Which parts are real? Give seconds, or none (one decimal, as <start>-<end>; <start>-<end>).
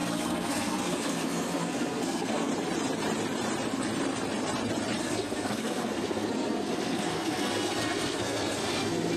2.5-5.0